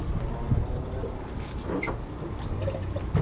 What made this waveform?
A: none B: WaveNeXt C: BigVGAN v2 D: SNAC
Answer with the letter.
A